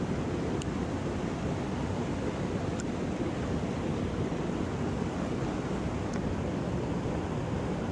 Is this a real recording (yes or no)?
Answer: yes